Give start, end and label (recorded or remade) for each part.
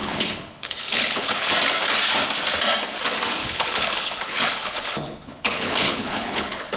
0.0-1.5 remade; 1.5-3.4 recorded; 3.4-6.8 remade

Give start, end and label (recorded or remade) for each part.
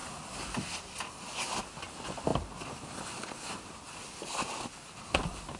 0.0-5.6 recorded